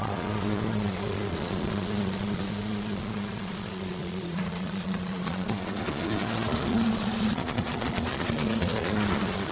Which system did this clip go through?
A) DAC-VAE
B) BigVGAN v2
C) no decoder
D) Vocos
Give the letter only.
D